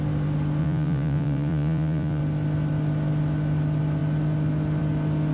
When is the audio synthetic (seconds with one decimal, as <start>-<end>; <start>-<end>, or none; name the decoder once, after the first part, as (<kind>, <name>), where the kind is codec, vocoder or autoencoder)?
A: 0.6-2.2 (vocoder, Vocos)